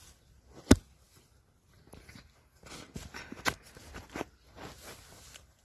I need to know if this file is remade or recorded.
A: recorded